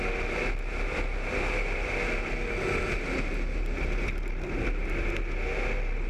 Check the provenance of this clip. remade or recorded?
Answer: recorded